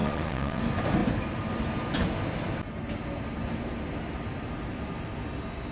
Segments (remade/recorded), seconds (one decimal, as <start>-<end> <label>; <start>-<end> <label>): 0.0-0.6 remade; 0.6-5.7 recorded